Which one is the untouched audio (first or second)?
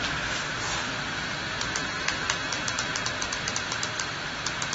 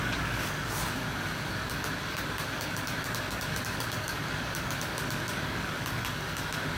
first